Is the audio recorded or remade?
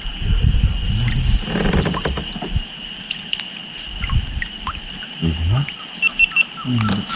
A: recorded